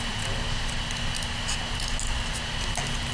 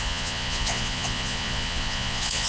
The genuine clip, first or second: first